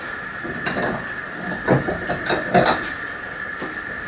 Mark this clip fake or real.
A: real